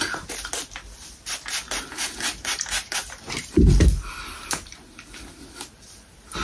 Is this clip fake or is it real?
real